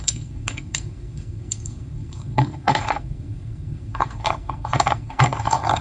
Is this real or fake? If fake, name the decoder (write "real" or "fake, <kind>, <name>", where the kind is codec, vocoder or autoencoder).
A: fake, codec, SNAC